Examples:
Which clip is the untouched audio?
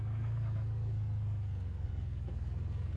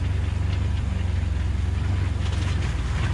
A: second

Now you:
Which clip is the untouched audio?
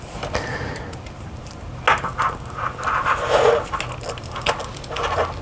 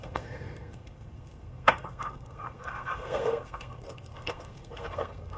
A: first